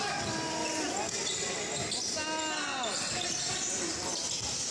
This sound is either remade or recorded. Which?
recorded